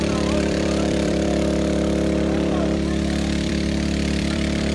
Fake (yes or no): yes